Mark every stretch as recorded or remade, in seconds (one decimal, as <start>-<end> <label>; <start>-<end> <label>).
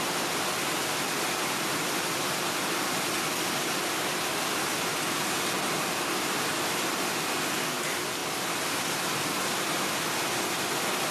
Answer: 0.0-11.1 recorded